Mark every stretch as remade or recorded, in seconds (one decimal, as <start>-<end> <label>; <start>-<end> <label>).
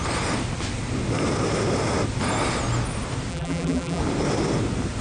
0.0-3.3 recorded; 3.3-4.0 remade; 4.0-5.0 recorded